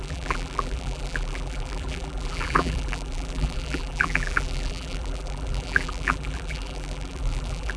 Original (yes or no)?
no